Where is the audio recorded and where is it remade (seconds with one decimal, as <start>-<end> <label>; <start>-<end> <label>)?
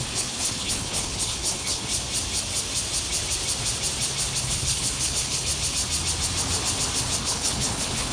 0.0-1.9 remade; 1.9-4.4 recorded; 4.4-5.5 remade; 5.5-7.2 recorded; 7.2-8.1 remade